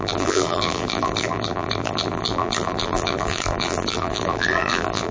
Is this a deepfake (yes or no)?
yes